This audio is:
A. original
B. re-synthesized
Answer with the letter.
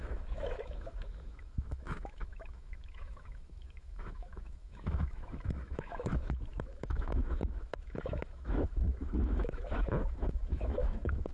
B